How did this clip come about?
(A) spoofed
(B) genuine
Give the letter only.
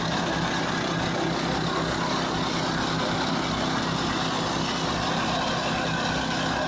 B